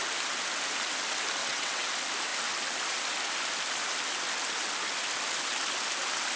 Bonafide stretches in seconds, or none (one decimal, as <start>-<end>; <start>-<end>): 0.0-1.4; 1.9-6.4